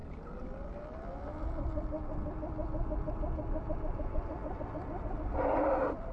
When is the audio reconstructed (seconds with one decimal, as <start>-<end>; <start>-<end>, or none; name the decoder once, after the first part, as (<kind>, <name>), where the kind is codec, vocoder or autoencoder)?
none